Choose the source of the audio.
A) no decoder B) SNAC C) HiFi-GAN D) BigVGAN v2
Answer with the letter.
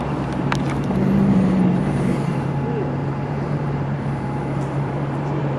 D